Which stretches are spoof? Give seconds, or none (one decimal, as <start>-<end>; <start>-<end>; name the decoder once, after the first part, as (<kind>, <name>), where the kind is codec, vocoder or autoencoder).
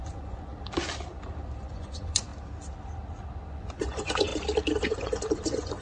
0.0-0.5 (vocoder, Vocos); 1.6-2.3; 3.5-4.3; 4.8-5.8